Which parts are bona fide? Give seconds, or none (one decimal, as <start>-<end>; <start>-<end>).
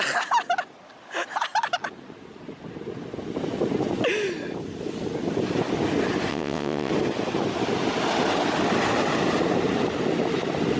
0.0-6.3; 6.9-10.8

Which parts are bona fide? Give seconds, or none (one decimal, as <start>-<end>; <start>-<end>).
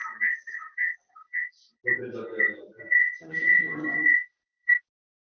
1.8-3.0; 4.7-5.3